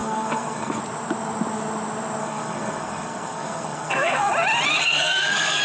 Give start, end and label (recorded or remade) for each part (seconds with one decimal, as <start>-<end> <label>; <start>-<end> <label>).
0.0-0.8 remade; 0.8-2.2 recorded; 2.2-4.3 remade; 4.3-4.8 recorded; 4.8-5.6 remade